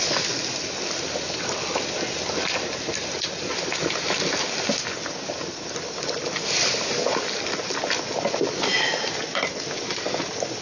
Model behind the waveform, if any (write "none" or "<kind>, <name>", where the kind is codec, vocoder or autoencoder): none